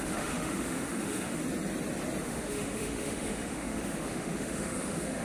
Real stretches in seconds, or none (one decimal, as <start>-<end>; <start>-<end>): 1.4-2.2